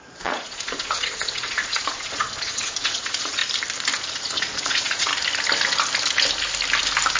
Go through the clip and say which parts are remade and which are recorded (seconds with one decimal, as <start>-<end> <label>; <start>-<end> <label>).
0.0-3.4 remade; 3.4-4.1 recorded; 4.1-5.1 remade; 5.1-7.2 recorded